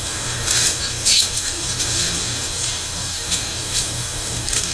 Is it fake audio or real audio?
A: fake